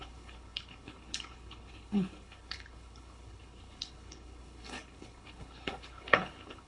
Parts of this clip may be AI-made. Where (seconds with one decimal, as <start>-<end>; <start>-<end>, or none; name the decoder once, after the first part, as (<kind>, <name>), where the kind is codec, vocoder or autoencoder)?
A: 0.0-6.7 (codec, HILCodec)